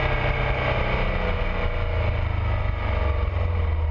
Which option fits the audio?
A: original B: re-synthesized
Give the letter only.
A